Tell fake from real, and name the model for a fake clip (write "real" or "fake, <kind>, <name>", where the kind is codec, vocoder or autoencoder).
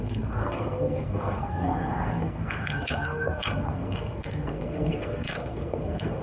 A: fake, codec, SNAC